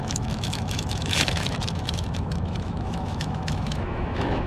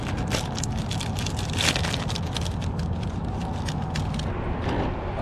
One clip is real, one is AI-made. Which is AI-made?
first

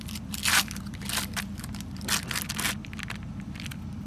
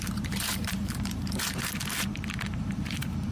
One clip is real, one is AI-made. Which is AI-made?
second